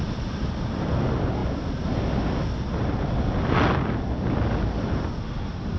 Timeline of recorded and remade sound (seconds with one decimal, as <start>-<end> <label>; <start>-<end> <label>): 0.0-5.8 recorded